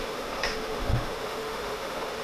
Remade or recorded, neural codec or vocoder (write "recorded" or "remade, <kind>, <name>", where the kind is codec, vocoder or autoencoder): remade, autoencoder, DAC-VAE